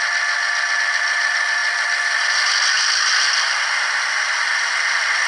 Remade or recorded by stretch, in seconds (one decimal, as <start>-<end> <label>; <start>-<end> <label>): 0.0-5.3 recorded